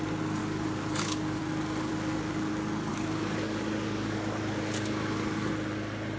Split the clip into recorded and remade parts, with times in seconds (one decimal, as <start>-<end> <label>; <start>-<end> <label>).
0.0-0.4 recorded; 0.4-1.4 remade; 1.4-1.9 recorded; 1.9-2.5 remade; 2.5-2.9 recorded; 2.9-5.5 remade; 5.5-6.2 recorded